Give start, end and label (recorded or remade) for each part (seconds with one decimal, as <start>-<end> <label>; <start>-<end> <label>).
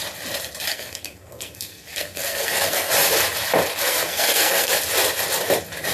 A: 0.0-0.7 recorded; 0.7-2.9 remade; 2.9-3.8 recorded; 3.8-4.7 remade; 4.7-5.9 recorded